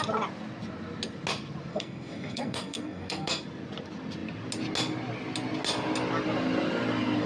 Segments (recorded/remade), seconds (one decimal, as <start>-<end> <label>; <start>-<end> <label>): 0.0-1.7 recorded; 1.7-3.4 remade; 3.4-7.3 recorded